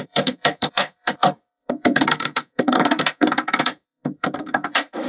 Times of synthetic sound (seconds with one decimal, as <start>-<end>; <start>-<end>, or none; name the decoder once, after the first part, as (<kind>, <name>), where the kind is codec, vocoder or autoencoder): 0.0-5.1 (codec, SNAC)